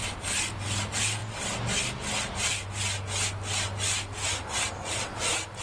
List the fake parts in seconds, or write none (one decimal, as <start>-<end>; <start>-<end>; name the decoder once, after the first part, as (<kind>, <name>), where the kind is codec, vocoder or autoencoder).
none